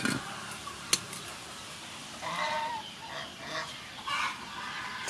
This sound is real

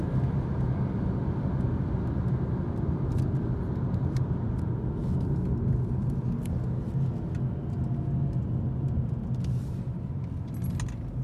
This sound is real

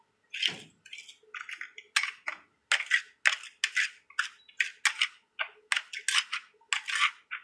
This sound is real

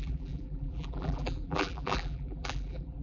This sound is fake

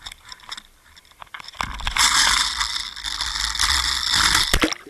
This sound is real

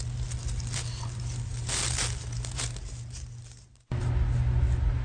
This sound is real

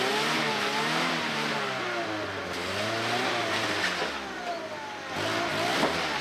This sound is real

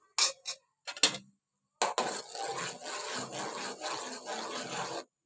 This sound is real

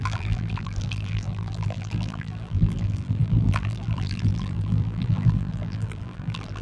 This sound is fake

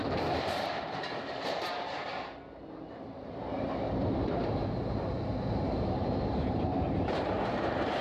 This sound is fake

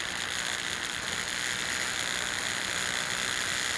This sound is real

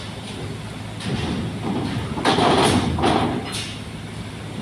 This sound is real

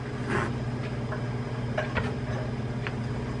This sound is real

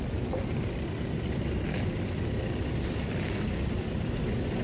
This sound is real